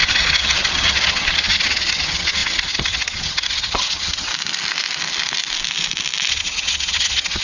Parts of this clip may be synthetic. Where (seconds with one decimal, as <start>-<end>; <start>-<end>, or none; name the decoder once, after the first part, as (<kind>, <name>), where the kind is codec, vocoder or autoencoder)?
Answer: 0.0-4.3 (vocoder, HiFi-GAN); 6.3-7.4